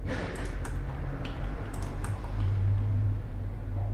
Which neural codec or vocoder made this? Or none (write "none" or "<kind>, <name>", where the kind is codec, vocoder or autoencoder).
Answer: vocoder, BigVGAN v2